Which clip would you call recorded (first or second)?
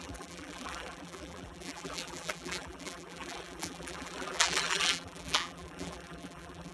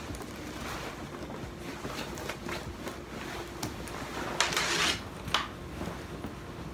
second